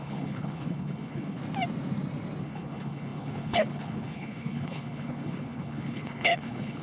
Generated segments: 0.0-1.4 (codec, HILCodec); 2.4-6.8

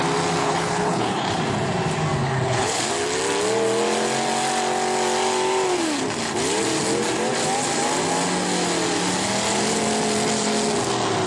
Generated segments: 0.4-1.4 (codec, HILCodec); 2.2-2.9

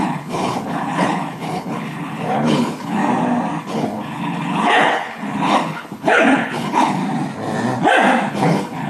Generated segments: 0.0-3.0 (codec, HILCodec); 3.6-7.0; 8.3-8.9

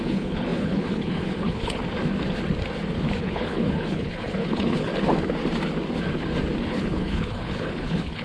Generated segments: 0.0-1.8 (codec, HILCodec); 3.2-4.9; 6.7-8.2

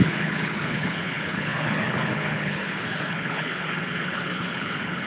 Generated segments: 0.0-5.1 (codec, HILCodec)